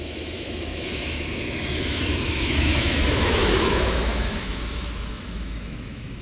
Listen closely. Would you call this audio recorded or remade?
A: remade